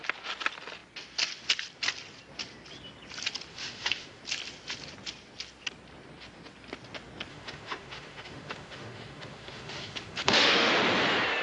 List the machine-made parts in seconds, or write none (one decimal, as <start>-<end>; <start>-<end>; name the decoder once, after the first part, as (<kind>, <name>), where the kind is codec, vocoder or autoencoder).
3.5-4.2 (autoencoder, DAC-VAE); 7.3-10.7